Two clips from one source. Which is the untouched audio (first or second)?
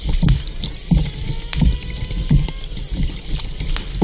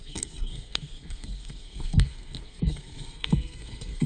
first